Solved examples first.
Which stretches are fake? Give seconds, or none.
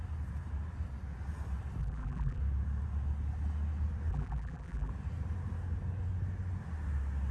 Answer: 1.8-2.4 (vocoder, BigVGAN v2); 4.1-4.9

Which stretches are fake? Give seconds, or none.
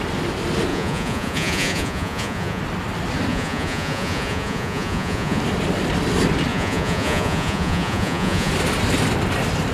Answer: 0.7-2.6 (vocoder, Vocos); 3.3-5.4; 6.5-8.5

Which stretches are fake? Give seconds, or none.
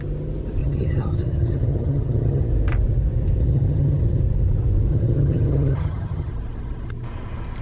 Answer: 0.6-2.5 (vocoder, HiFi-GAN); 3.4-4.2; 4.9-6.3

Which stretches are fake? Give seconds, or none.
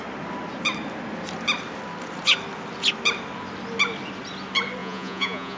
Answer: 4.8-5.6 (vocoder, Vocos)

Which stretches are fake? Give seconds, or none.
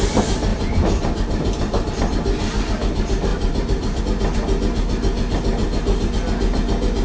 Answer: 0.5-1.9 (vocoder, BigVGAN v2); 3.3-4.0; 5.6-6.1